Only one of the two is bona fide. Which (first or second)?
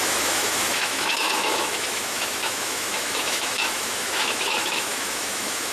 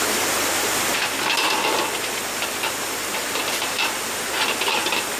second